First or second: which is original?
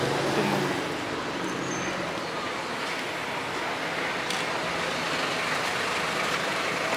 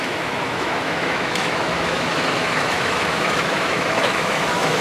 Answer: first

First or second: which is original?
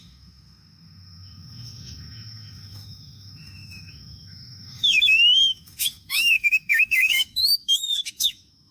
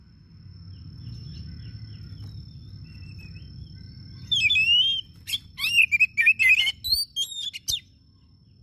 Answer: second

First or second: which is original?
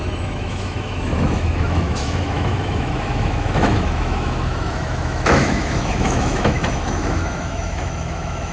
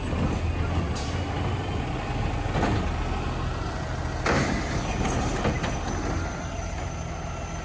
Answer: second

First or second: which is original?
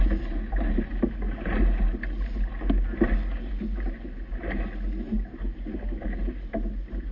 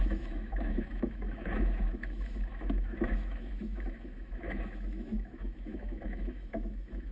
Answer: first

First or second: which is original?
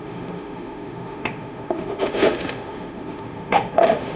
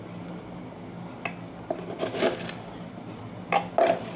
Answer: second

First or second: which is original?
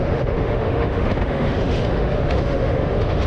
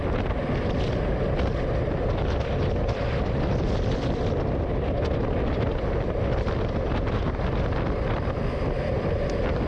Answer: second